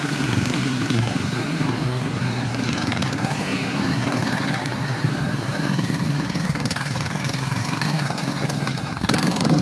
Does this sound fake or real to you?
fake